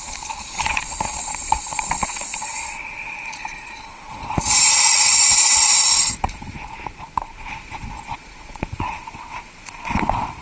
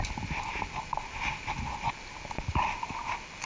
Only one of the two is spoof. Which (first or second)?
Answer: first